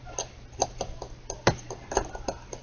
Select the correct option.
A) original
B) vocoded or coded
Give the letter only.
A